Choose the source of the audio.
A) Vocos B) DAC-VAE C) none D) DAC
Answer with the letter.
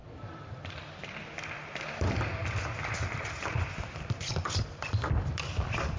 C